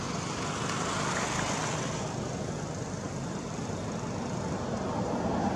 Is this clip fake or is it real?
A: real